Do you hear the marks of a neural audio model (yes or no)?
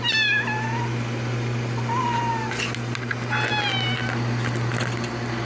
no